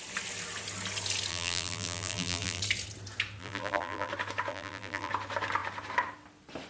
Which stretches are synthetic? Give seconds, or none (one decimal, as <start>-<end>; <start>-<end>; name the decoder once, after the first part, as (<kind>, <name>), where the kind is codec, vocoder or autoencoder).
1.3-2.6 (vocoder, BigVGAN v2); 3.4-4.1; 4.5-5.1